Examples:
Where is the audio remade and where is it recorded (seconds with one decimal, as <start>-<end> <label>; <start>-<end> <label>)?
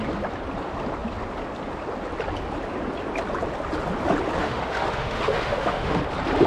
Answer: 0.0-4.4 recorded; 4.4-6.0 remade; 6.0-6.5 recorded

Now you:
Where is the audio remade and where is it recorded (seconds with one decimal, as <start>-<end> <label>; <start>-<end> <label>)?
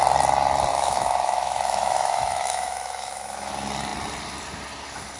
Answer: 0.0-0.7 recorded; 0.7-3.5 remade; 3.5-5.2 recorded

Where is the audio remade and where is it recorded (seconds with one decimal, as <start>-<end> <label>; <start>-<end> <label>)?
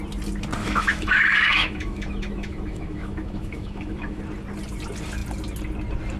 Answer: 0.0-0.6 recorded; 0.6-4.2 remade; 4.2-6.2 recorded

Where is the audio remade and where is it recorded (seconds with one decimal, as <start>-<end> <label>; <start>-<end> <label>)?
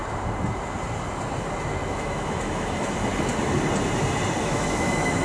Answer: 0.0-1.9 recorded; 1.9-3.1 remade; 3.1-4.4 recorded; 4.4-5.2 remade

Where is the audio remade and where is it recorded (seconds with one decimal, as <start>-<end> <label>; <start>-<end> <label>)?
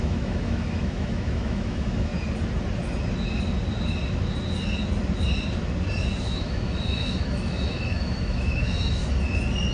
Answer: 0.0-2.1 remade; 2.1-6.2 recorded; 6.2-9.0 remade; 9.0-9.7 recorded